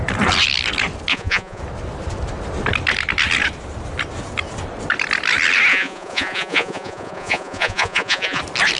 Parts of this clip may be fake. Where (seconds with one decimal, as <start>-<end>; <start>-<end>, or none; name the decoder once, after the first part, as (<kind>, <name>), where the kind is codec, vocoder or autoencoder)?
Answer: 1.1-1.6 (vocoder, Vocos); 5.7-8.4